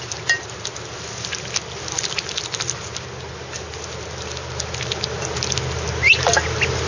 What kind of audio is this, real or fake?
real